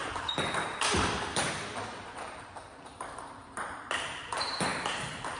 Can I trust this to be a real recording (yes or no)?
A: no